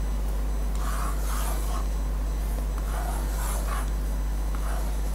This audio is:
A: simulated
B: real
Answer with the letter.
B